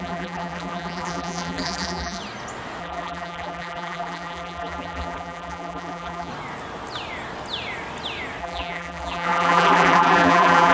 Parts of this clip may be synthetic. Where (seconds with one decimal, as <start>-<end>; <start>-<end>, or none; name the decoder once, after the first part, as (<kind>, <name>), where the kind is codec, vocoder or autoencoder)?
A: 0.0-2.2 (vocoder, BigVGAN v2); 2.8-6.3; 8.4-10.7